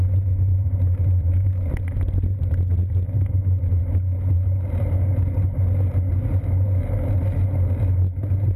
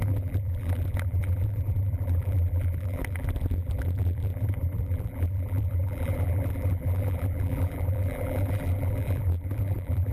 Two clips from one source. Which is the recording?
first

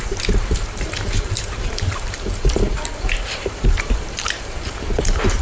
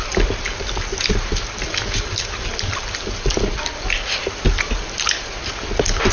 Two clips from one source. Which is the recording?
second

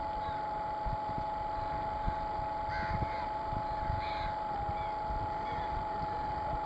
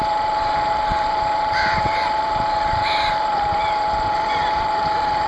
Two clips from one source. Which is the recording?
first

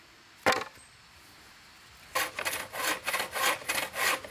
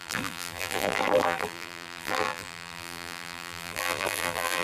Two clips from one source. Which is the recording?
first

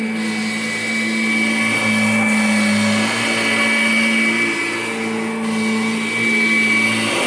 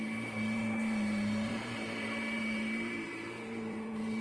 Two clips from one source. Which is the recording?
first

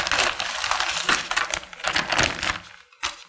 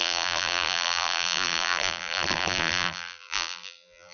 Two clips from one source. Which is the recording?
first